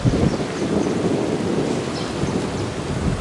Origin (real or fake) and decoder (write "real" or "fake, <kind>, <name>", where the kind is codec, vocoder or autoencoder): real